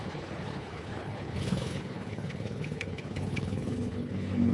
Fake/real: fake